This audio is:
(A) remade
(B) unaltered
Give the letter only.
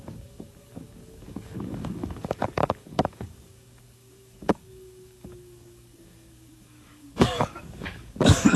A